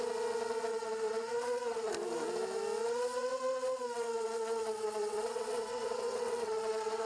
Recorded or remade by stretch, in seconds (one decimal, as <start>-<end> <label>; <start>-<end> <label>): 0.0-0.7 recorded; 0.7-1.9 remade; 1.9-2.8 recorded; 2.8-7.1 remade